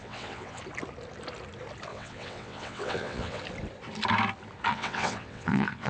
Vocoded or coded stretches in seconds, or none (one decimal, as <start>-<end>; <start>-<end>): 0.0-0.6; 1.9-3.4; 4.7-5.9